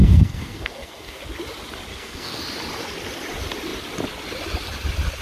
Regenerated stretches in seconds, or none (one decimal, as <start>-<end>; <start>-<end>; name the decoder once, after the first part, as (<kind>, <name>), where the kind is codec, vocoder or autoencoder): 0.0-1.2 (codec, SNAC); 1.9-2.4

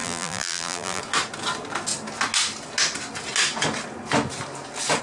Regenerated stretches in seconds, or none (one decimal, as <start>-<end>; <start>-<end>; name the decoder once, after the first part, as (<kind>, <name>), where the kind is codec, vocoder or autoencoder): 0.0-1.0 (vocoder, BigVGAN v2)